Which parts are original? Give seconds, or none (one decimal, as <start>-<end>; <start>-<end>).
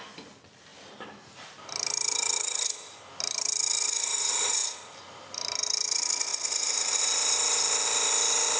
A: 0.0-8.6